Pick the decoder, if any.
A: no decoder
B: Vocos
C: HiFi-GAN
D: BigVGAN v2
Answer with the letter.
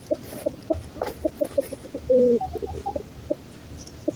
D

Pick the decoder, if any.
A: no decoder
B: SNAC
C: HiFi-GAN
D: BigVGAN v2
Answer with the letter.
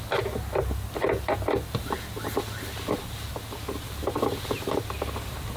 D